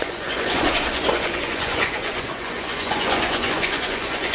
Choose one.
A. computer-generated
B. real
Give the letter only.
A